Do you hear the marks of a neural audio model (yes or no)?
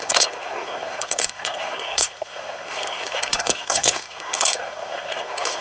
yes